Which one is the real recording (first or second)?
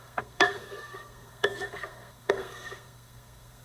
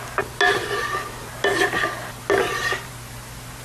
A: second